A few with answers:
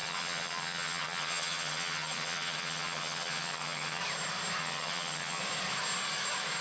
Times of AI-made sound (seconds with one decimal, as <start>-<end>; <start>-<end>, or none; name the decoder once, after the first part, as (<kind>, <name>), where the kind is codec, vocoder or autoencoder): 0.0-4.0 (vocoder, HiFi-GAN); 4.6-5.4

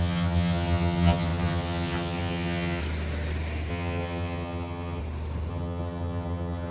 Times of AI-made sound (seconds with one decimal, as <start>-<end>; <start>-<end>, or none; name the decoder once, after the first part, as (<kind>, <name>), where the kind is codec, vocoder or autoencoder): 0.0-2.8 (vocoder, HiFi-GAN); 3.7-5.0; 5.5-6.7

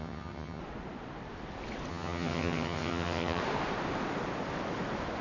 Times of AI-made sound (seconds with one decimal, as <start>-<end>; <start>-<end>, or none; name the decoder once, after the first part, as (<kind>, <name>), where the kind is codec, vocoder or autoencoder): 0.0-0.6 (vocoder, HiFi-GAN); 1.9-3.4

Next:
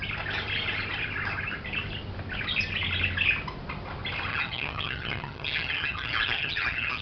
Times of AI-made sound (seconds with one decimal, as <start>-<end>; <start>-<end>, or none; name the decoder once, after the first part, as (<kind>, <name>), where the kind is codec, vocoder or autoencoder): 4.3-7.0 (vocoder, HiFi-GAN)